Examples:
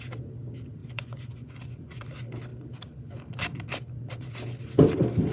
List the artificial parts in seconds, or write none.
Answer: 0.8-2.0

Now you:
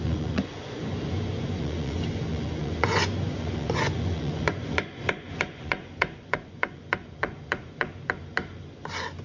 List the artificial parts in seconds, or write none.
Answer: 0.0-8.2

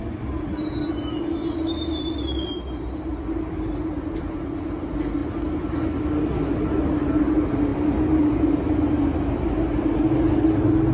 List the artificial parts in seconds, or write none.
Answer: none

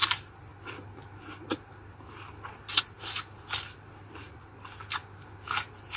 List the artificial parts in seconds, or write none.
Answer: none

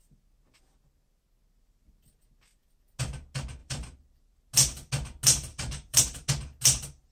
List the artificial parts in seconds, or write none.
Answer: 3.6-4.3; 5.5-6.0

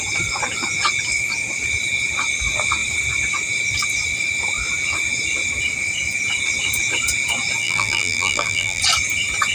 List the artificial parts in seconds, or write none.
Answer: 7.6-8.8